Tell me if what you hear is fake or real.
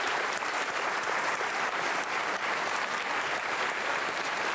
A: fake